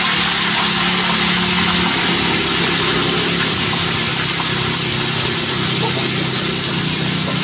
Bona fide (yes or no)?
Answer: yes